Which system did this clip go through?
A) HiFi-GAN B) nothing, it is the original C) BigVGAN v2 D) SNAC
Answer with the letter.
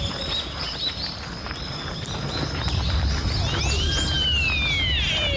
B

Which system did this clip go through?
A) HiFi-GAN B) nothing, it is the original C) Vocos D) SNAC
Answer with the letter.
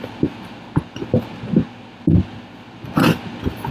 B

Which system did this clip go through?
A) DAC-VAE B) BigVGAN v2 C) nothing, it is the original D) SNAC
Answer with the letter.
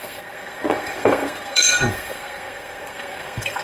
D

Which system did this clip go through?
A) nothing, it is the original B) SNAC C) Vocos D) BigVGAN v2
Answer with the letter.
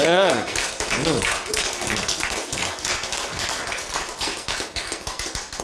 B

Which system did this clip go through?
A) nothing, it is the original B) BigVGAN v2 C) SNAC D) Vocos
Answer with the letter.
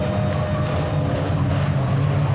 A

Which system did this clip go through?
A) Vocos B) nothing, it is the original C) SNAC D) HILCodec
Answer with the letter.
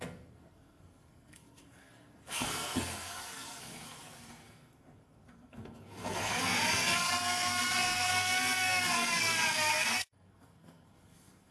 C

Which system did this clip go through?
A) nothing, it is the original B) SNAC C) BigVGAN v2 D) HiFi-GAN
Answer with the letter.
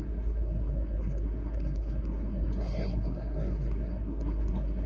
B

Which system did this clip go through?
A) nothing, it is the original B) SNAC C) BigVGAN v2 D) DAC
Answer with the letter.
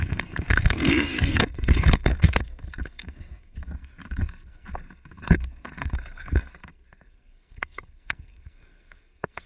B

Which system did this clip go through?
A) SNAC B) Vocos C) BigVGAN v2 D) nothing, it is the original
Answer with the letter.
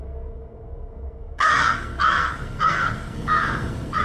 A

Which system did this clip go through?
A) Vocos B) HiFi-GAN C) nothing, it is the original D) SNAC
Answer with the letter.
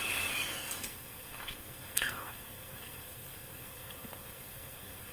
D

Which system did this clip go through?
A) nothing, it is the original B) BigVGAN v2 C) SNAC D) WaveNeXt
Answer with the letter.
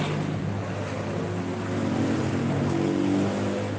A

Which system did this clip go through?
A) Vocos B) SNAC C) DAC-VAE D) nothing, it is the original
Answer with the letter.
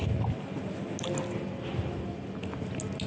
D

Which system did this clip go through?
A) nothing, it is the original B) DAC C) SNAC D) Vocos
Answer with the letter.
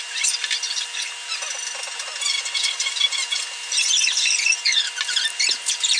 A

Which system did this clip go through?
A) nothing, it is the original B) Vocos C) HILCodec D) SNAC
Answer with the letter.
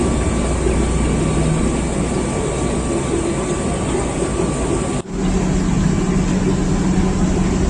A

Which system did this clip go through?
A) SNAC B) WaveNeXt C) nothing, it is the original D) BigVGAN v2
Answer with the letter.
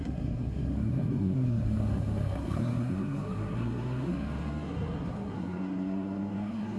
A